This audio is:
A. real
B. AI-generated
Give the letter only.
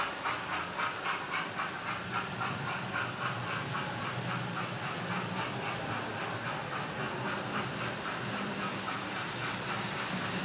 A